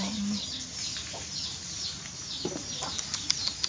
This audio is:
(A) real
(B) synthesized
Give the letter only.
A